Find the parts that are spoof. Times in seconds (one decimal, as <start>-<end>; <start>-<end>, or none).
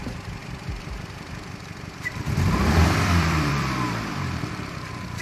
0.0-5.2